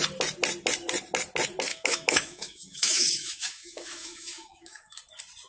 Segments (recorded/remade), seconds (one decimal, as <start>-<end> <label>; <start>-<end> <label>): 0.0-1.7 recorded; 1.7-5.0 remade; 5.0-5.5 recorded